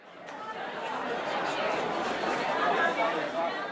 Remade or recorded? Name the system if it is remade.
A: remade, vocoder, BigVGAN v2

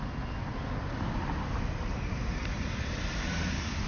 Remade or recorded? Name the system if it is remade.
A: recorded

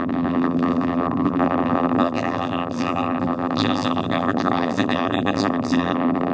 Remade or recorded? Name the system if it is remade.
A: remade, vocoder, BigVGAN v2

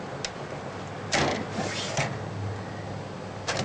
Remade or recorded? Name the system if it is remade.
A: recorded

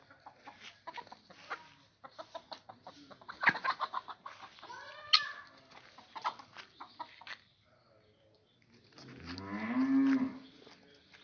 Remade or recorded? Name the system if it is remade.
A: recorded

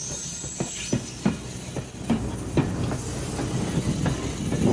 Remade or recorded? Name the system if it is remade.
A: recorded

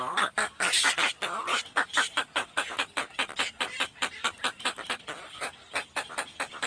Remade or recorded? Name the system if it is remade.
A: recorded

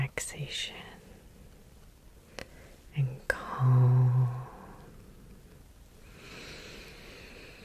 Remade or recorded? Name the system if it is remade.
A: recorded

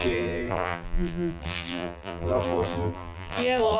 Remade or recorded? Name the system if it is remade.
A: remade, vocoder, BigVGAN v2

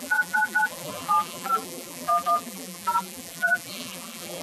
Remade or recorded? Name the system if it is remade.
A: remade, vocoder, BigVGAN v2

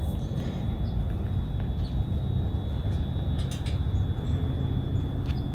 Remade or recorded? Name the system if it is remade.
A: recorded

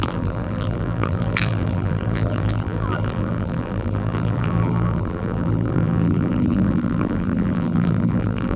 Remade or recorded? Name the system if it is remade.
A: remade, vocoder, BigVGAN v2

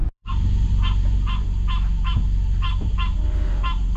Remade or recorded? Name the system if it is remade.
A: remade, vocoder, BigVGAN v2